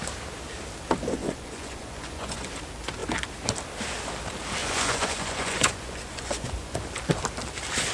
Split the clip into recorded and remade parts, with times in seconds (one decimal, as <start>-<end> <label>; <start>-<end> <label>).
0.0-1.2 recorded; 1.2-2.5 remade; 2.5-4.6 recorded; 4.6-6.8 remade; 6.8-7.9 recorded